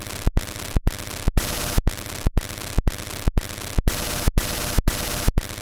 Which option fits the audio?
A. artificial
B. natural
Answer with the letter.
B